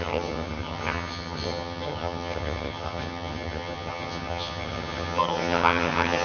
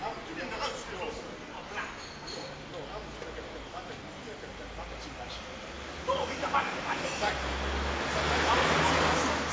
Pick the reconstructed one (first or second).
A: first